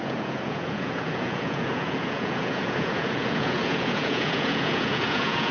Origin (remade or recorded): remade